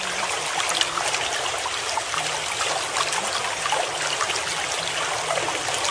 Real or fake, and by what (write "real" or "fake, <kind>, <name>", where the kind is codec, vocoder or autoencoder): real